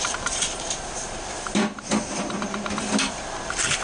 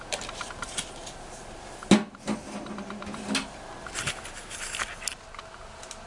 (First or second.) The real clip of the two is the second